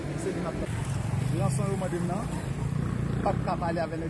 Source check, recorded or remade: recorded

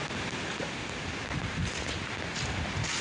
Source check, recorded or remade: recorded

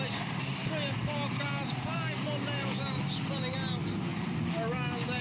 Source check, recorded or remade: recorded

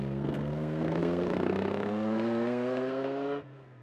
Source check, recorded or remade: remade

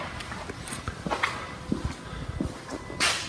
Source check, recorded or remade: recorded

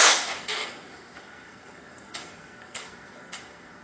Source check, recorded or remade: remade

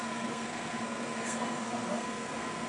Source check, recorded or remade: remade